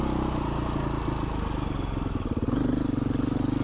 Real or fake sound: real